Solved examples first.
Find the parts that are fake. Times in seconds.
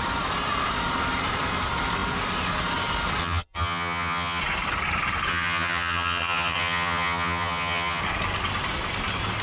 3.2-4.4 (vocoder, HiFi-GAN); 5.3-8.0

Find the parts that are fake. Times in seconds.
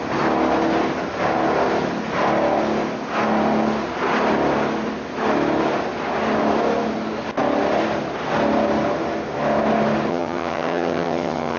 10.1-11.6 (vocoder, HiFi-GAN)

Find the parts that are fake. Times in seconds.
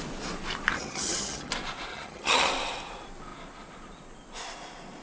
0.7-1.5 (vocoder, HiFi-GAN); 1.9-2.5